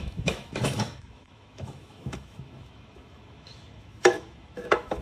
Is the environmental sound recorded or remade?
remade